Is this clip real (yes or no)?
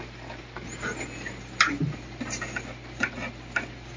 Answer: yes